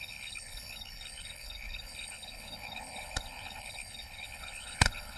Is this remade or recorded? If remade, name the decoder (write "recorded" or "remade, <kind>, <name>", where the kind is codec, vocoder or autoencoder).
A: remade, codec, HILCodec